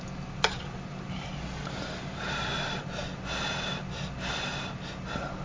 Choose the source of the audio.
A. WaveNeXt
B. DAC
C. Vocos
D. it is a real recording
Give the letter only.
D